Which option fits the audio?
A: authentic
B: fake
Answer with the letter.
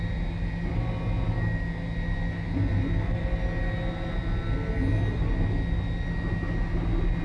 A